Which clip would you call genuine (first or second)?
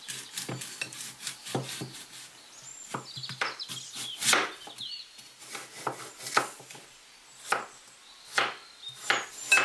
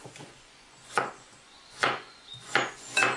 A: first